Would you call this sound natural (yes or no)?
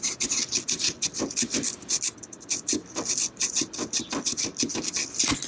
no